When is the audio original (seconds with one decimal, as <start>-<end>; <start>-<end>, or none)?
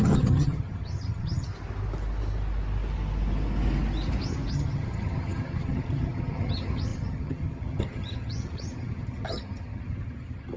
1.5-4.5